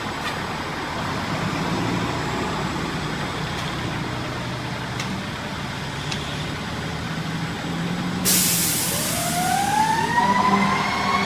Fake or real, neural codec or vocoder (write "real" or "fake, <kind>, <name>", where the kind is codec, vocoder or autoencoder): real